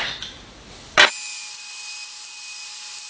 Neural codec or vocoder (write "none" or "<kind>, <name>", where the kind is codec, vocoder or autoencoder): none